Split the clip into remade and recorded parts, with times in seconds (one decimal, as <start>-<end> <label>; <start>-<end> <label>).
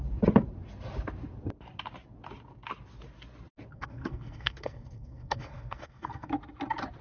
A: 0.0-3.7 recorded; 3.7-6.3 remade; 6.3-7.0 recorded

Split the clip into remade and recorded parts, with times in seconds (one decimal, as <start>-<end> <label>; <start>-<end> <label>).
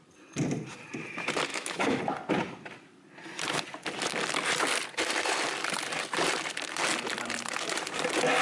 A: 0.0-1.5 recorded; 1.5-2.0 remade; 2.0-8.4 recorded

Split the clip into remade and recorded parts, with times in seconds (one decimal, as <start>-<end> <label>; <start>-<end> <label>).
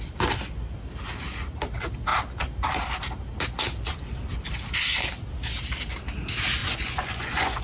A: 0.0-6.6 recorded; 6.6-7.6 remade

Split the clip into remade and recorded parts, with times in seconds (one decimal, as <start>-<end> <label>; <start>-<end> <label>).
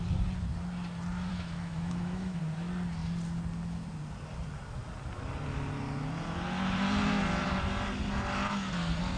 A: 0.0-1.3 recorded; 1.3-2.4 remade; 2.4-9.2 recorded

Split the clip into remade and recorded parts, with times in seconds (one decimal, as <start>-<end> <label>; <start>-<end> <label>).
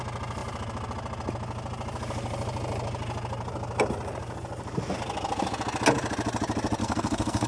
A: 0.0-6.8 recorded; 6.8-7.5 remade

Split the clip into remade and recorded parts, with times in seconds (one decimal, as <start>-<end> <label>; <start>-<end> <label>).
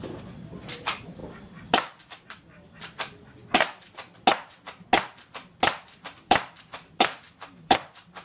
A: 0.0-3.4 remade; 3.4-5.8 recorded; 5.8-8.2 remade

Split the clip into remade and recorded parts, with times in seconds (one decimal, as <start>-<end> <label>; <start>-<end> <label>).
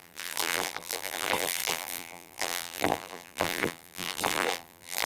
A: 0.0-5.1 remade